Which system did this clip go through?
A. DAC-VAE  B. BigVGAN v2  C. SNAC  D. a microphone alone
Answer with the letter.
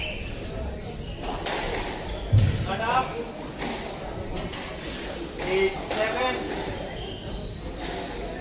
D